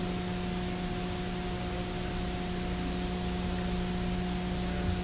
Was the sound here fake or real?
real